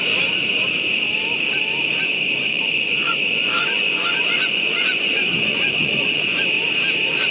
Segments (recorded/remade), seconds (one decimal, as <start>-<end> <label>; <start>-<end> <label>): 0.0-2.0 recorded; 2.0-6.4 remade; 6.4-7.3 recorded